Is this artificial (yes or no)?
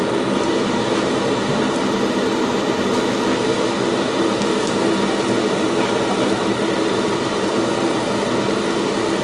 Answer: no